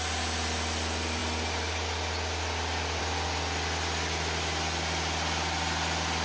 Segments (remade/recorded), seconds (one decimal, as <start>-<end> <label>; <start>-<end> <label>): 0.0-6.2 recorded